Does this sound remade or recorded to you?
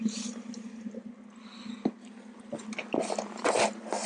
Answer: recorded